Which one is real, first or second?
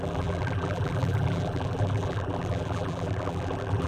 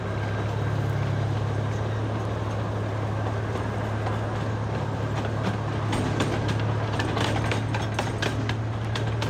second